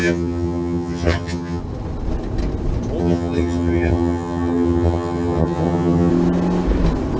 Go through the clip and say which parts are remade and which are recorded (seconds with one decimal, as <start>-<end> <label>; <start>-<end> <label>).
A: 0.0-1.6 remade; 1.6-3.0 recorded; 3.0-6.1 remade; 6.1-7.2 recorded